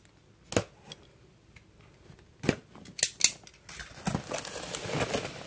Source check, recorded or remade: recorded